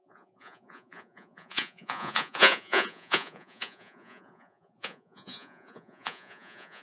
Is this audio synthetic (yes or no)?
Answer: yes